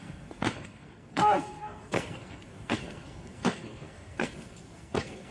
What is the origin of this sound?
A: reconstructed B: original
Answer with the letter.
A